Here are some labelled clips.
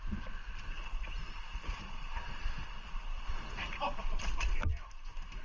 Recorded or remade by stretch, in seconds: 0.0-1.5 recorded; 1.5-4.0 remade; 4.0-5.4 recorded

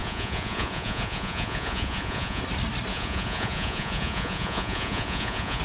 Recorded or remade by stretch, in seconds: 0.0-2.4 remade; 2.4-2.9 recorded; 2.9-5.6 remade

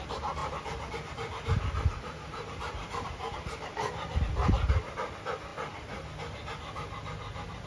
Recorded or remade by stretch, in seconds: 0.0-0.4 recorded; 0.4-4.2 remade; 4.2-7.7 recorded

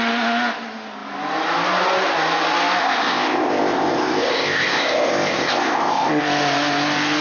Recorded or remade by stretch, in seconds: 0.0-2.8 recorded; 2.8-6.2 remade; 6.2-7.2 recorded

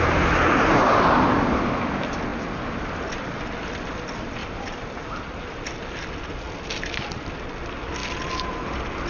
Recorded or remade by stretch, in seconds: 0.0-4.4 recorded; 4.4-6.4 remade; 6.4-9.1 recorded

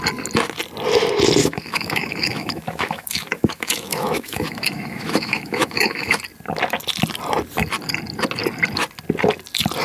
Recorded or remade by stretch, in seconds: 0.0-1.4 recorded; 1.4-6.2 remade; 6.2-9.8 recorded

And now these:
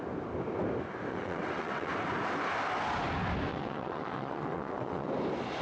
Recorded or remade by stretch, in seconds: 0.0-1.1 recorded; 1.1-1.9 remade; 1.9-3.5 recorded; 3.5-5.1 remade; 5.1-5.6 recorded